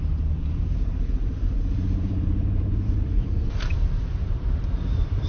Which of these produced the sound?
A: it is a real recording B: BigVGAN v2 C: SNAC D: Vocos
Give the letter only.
B